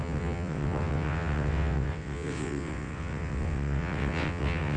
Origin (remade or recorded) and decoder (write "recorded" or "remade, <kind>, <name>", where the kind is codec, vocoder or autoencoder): remade, vocoder, WaveNeXt